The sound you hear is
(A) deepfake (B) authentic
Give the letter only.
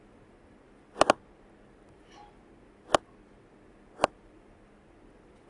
B